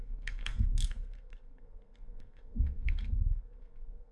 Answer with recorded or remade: remade